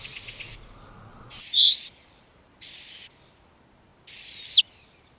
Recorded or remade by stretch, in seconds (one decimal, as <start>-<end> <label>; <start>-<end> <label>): 0.0-1.1 recorded; 1.1-2.1 remade; 2.1-5.2 recorded